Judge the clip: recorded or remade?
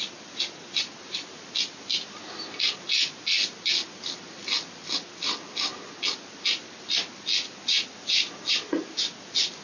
recorded